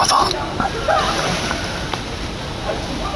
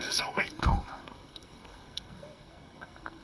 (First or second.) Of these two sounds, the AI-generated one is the second